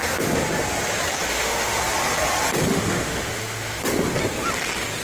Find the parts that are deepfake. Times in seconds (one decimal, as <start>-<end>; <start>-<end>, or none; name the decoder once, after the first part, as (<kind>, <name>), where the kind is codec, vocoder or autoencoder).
1.3-1.8 (autoencoder, DAC-VAE); 2.7-3.8